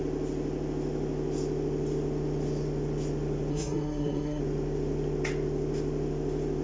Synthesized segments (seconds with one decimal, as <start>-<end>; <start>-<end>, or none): 3.5-4.4